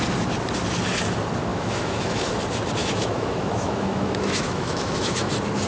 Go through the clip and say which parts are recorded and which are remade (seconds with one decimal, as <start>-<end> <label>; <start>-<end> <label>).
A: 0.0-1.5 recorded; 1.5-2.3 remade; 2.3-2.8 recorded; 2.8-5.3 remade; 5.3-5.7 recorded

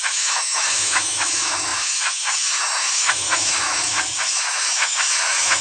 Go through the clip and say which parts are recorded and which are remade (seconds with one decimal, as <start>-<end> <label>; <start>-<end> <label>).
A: 0.0-5.6 remade

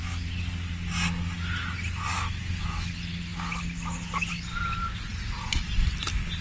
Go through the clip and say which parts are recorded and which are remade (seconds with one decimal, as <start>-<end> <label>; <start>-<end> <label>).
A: 0.0-2.1 recorded; 2.1-2.9 remade; 2.9-6.4 recorded